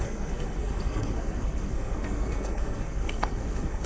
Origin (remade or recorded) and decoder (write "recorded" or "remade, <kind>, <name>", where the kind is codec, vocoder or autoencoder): remade, codec, SNAC